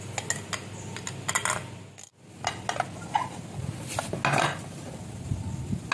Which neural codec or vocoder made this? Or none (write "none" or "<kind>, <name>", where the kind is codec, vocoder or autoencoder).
none